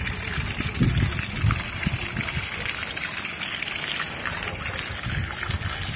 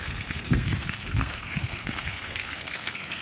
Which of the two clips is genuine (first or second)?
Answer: first